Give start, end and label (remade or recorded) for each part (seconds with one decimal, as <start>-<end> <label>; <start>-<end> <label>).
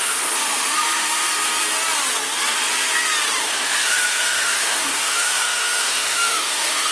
0.0-1.3 remade; 1.3-3.4 recorded; 3.4-6.9 remade